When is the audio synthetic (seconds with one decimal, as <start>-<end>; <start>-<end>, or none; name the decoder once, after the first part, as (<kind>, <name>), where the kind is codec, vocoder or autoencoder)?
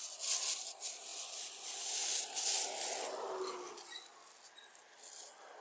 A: none